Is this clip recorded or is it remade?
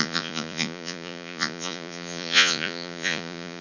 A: remade